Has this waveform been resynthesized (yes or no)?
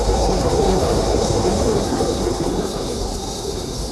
yes